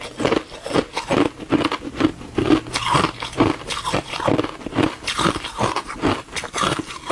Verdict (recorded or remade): recorded